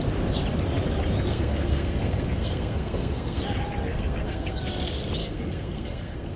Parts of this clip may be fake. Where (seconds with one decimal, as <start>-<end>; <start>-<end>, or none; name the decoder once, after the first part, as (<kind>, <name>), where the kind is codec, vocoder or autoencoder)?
1.3-3.4 (codec, SNAC); 3.9-4.6; 5.2-6.4